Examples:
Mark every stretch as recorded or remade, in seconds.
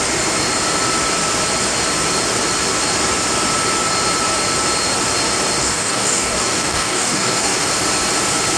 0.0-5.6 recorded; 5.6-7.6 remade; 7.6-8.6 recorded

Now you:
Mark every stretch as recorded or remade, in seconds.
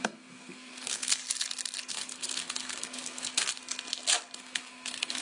0.0-1.2 remade; 1.2-1.9 recorded; 1.9-3.6 remade; 3.6-4.4 recorded; 4.4-5.2 remade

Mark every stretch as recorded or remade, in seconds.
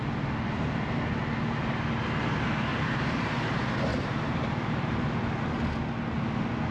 0.0-2.7 recorded; 2.7-3.4 remade; 3.4-3.9 recorded; 3.9-5.1 remade; 5.1-6.7 recorded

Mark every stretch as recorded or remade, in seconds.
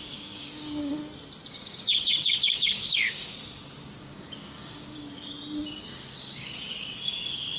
0.0-1.0 remade; 1.0-1.5 recorded; 1.5-3.3 remade; 3.3-4.0 recorded; 4.0-5.3 remade; 5.3-5.8 recorded; 5.8-7.6 remade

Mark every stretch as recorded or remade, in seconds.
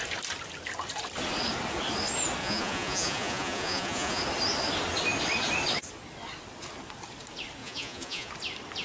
0.0-2.4 recorded; 2.4-4.2 remade; 4.2-7.6 recorded; 7.6-8.3 remade; 8.3-8.8 recorded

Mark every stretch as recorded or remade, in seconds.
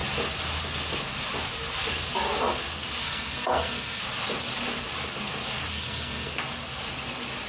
0.0-3.0 recorded; 3.0-4.0 remade; 4.0-5.7 recorded; 5.7-6.3 remade; 6.3-7.5 recorded